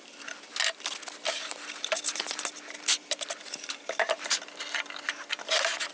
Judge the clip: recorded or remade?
recorded